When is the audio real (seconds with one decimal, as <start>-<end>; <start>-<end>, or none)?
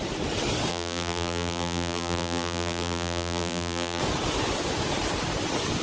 0.0-0.7; 4.0-5.8